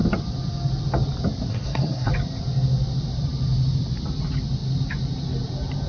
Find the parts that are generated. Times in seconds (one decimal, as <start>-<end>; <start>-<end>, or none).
1.5-2.1